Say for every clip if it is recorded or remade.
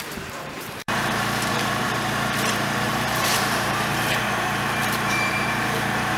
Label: remade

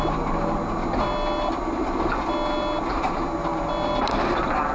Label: recorded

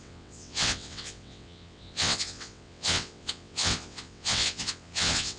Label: remade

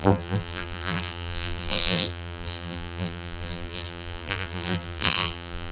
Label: remade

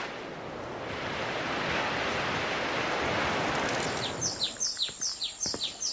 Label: recorded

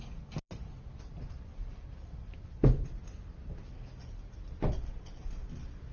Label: recorded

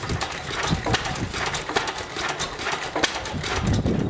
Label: recorded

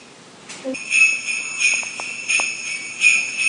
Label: recorded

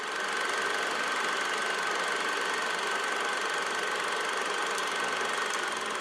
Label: recorded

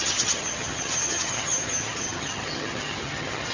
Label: remade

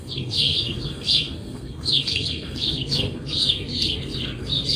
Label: remade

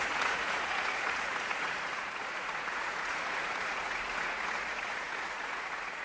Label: remade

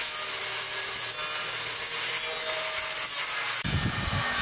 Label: recorded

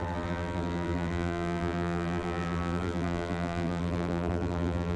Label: remade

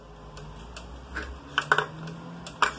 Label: recorded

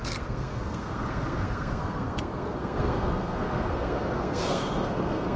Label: remade